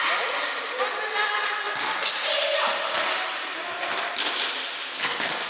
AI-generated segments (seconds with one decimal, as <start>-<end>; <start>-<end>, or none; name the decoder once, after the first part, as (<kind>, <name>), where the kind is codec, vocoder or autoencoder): 5.0-5.5 (codec, SNAC)